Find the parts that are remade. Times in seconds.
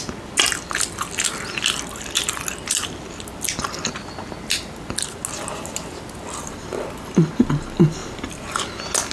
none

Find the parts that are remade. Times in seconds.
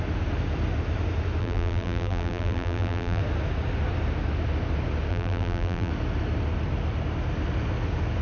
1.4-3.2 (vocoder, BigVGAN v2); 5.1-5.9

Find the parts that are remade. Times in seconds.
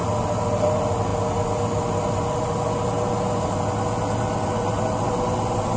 none